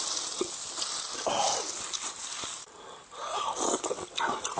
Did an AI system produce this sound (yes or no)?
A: no